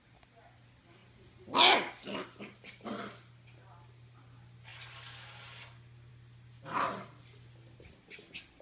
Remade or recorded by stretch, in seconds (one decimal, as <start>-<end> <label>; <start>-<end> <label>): 0.0-8.6 recorded